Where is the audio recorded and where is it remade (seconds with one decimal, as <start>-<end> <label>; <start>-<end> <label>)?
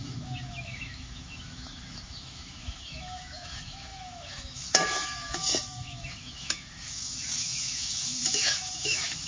0.0-9.3 remade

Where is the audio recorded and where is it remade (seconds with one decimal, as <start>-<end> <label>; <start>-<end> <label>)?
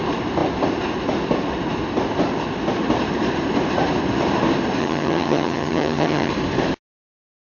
0.0-4.8 recorded; 4.8-6.3 remade; 6.3-7.5 recorded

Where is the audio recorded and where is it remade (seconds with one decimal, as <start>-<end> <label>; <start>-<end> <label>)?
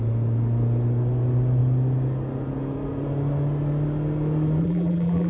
0.0-4.6 recorded; 4.6-5.3 remade